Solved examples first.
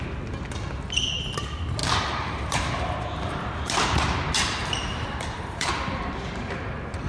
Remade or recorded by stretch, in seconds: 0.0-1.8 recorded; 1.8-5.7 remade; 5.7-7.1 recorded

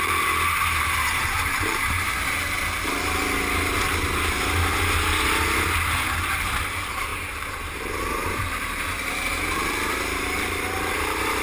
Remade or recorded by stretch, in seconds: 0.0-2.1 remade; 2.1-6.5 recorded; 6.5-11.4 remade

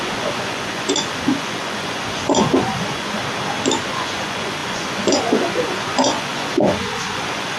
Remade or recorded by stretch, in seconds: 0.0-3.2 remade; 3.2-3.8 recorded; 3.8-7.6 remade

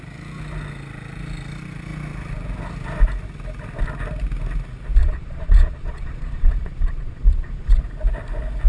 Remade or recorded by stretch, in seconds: 0.0-5.0 recorded; 5.0-7.8 remade; 7.8-8.7 recorded

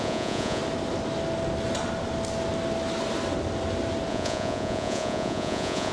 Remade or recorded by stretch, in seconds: 0.0-0.6 remade; 0.6-4.1 recorded; 4.1-5.9 remade